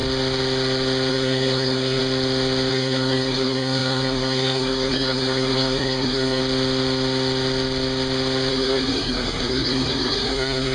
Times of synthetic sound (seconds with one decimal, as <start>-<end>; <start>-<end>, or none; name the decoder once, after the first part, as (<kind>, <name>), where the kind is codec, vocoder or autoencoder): 1.1-2.0 (codec, SNAC); 2.7-6.4; 8.5-10.7